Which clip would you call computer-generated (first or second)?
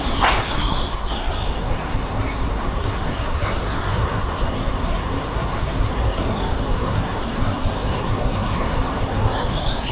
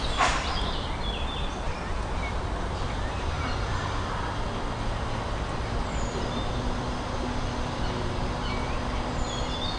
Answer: first